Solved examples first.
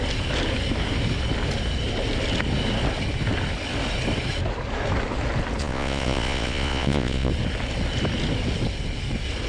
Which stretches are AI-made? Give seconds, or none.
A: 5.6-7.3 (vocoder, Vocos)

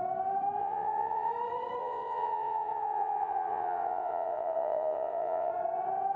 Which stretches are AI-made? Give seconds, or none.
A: 0.6-1.3 (vocoder, Vocos); 1.8-5.5

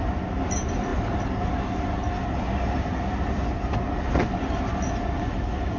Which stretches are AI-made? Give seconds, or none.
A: none

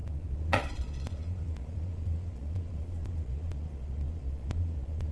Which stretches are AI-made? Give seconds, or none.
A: 0.0-5.1 (vocoder, Vocos)

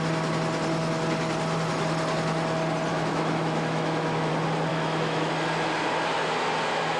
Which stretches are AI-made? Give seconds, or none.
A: 2.9-4.3 (autoencoder, DAC-VAE); 4.7-5.3